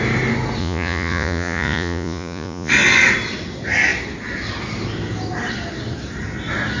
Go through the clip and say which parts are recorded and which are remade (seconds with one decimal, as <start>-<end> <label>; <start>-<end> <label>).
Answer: 0.0-0.6 recorded; 0.6-2.7 remade; 2.7-6.8 recorded